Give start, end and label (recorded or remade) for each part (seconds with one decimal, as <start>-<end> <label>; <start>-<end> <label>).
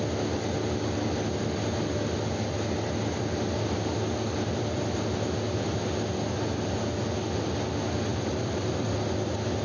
0.0-8.1 recorded; 8.1-8.9 remade; 8.9-9.6 recorded